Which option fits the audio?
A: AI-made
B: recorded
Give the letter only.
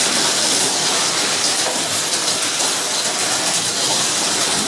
A